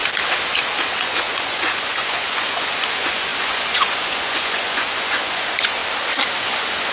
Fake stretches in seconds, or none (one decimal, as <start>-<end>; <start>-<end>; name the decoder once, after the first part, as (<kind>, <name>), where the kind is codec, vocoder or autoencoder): 1.0-5.8 (vocoder, Vocos); 6.4-6.9